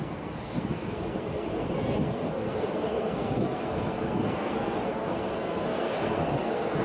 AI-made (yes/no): yes